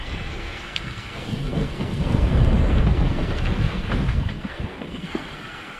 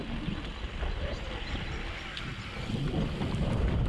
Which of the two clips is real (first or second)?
second